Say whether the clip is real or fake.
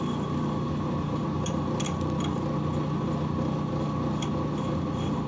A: real